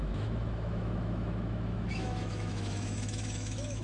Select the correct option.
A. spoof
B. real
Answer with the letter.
A